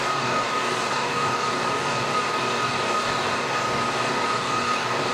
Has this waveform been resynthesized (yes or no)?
yes